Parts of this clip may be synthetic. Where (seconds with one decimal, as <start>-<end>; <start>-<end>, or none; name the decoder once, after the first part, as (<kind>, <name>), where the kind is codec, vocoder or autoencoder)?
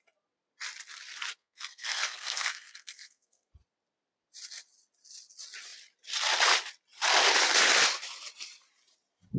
1.4-3.5 (codec, SNAC)